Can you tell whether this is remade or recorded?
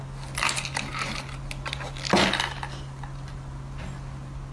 recorded